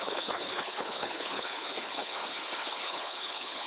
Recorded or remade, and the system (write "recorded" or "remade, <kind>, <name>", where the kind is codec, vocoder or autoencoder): remade, codec, HILCodec